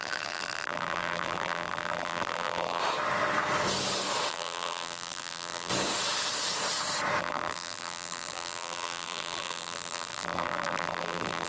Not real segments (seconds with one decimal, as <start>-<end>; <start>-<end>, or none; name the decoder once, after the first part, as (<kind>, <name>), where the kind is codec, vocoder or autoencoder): 0.0-2.8 (vocoder, BigVGAN v2); 4.3-5.7; 7.2-11.5